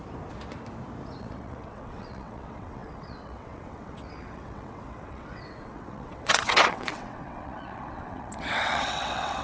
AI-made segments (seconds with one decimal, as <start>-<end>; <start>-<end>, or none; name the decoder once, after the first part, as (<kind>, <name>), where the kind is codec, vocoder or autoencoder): 1.2-9.4 (vocoder, WaveNeXt)